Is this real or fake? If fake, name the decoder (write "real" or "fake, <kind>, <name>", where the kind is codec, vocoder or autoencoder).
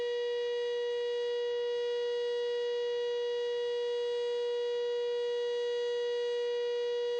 real